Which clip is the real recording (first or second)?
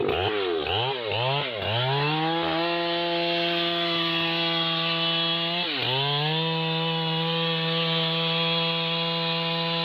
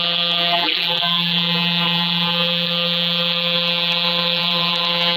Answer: first